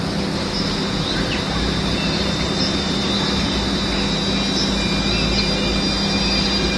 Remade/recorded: recorded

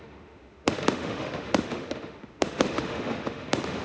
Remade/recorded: remade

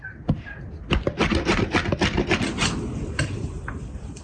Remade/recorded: recorded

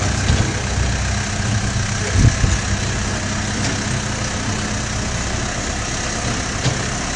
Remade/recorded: recorded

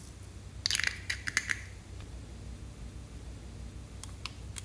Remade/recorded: recorded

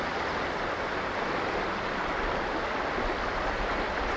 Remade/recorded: recorded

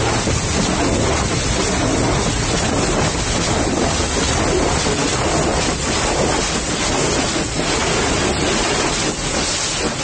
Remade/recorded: recorded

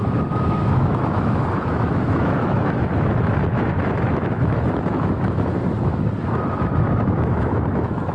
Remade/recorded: remade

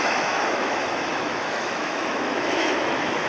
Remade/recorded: remade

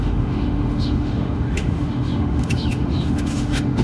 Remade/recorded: remade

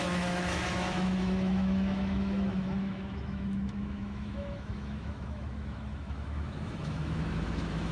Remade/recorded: remade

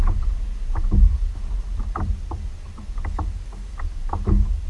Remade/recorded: recorded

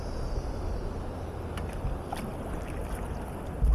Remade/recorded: recorded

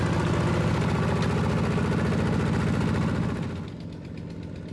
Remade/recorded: recorded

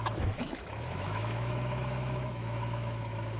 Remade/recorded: remade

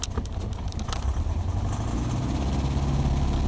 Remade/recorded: recorded